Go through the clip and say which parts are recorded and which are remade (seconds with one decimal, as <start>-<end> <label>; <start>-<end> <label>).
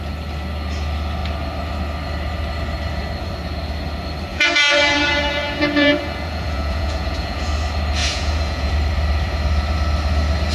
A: 0.0-4.3 recorded; 4.3-7.5 remade; 7.5-8.0 recorded; 8.0-8.7 remade; 8.7-10.5 recorded